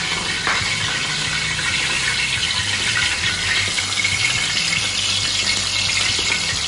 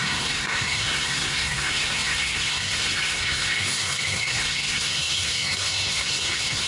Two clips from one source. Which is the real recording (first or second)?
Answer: first